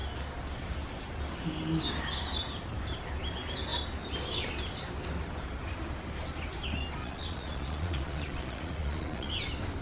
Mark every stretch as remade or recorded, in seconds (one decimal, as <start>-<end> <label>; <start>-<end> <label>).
0.0-7.0 recorded; 7.0-9.3 remade; 9.3-9.8 recorded